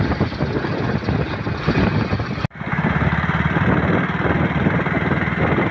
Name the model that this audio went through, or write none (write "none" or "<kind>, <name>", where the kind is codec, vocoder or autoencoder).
none